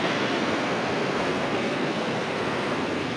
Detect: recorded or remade remade